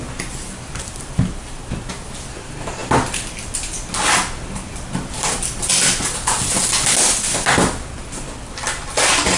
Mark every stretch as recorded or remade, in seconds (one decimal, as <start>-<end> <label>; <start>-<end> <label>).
0.0-9.4 recorded